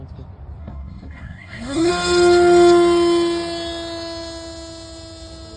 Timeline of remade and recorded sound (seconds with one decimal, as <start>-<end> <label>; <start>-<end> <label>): 0.0-0.6 recorded; 0.6-1.9 remade; 1.9-5.6 recorded